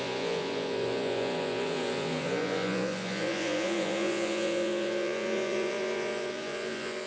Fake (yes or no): yes